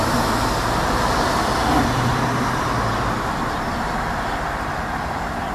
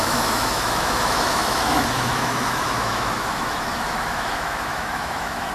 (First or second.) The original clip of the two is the first